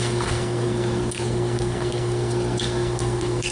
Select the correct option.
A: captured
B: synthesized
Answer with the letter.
B